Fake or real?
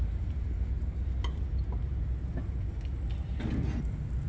real